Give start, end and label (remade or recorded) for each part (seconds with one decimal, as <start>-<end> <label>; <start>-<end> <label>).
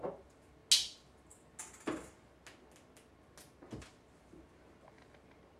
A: 0.0-5.6 recorded